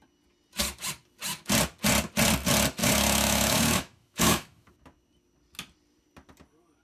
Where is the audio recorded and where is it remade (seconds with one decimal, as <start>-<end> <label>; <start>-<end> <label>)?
0.0-2.8 recorded; 2.8-4.7 remade; 4.7-6.8 recorded